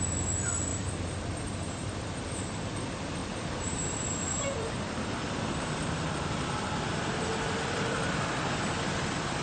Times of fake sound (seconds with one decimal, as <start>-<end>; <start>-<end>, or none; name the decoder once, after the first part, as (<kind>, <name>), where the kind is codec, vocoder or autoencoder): 0.7-1.9 (vocoder, BigVGAN v2); 3.2-6.5